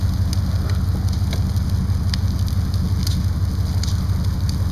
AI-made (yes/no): no